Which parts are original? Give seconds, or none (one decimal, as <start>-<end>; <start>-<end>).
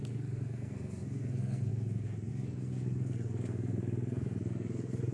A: none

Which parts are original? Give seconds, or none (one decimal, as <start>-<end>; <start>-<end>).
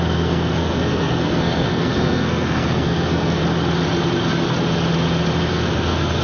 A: 3.4-5.5